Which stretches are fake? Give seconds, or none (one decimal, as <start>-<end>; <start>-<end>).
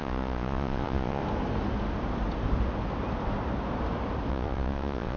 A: 0.0-1.2; 4.3-5.2